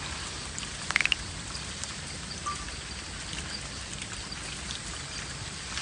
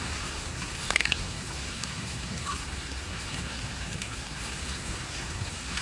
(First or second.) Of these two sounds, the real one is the first